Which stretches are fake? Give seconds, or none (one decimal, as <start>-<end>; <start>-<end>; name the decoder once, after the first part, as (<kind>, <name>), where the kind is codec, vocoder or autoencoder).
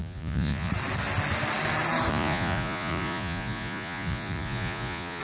0.0-0.7 (vocoder, Vocos); 2.1-5.2